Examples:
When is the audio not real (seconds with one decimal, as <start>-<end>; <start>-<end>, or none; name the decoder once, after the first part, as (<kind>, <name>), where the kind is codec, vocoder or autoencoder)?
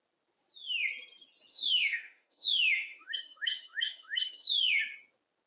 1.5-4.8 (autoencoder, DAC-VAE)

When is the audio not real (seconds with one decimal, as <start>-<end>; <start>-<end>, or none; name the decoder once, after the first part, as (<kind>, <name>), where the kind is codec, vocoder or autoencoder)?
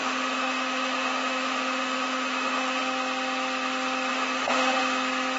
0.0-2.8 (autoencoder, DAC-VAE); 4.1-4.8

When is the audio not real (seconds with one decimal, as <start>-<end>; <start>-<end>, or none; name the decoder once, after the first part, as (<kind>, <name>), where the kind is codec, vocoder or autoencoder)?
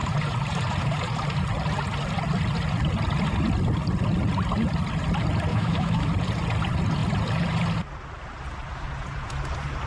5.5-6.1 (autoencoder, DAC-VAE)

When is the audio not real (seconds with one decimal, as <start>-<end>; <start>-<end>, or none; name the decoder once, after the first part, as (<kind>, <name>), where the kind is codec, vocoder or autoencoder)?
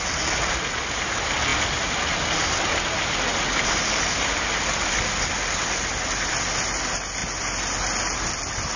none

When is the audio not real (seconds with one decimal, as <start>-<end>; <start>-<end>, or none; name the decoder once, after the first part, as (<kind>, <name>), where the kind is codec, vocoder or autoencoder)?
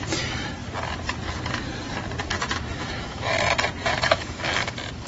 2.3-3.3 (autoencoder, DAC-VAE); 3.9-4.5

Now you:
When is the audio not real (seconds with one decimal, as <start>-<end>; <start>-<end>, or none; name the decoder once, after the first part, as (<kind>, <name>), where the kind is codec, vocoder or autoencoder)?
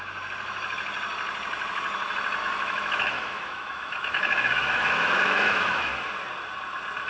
2.4-5.9 (autoencoder, DAC-VAE)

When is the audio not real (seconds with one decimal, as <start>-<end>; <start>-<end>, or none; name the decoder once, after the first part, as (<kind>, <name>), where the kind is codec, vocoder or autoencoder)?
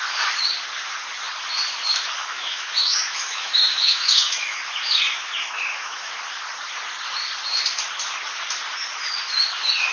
2.2-6.1 (autoencoder, DAC-VAE)